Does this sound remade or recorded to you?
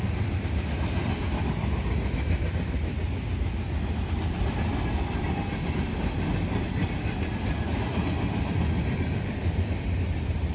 recorded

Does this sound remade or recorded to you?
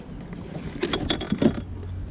recorded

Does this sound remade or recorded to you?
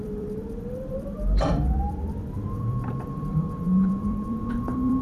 remade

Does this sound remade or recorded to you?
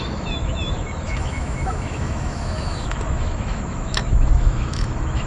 remade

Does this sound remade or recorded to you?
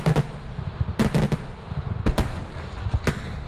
recorded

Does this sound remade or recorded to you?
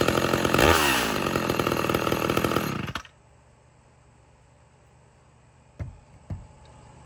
remade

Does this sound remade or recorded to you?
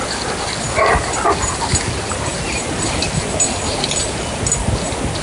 recorded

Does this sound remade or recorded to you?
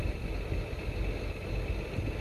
recorded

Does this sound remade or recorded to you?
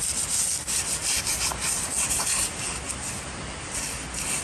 recorded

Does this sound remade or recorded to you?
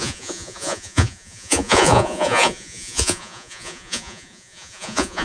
remade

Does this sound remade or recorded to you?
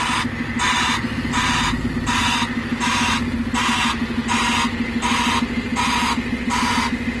recorded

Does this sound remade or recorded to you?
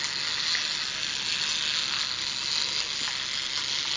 recorded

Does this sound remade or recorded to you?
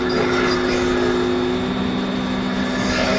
recorded